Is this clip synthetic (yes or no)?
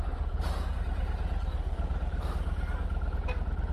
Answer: no